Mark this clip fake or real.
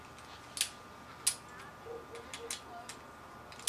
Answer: real